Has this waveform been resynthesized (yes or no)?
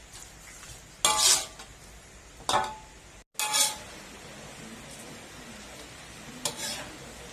no